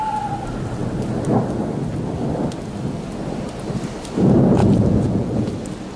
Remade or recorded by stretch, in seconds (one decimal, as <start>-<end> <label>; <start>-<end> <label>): 0.0-4.6 recorded; 4.6-5.5 remade; 5.5-6.0 recorded